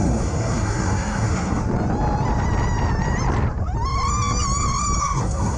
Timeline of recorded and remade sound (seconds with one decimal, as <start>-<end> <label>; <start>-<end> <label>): 0.0-1.6 remade; 1.6-5.0 recorded; 5.0-5.6 remade